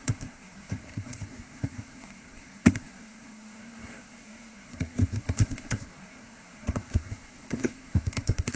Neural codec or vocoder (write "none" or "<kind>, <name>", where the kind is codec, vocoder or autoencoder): codec, SNAC